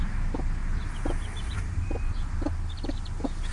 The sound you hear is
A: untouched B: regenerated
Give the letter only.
A